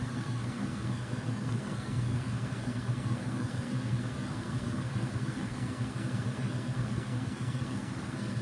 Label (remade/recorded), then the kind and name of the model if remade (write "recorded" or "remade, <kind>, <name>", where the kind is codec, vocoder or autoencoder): remade, codec, SNAC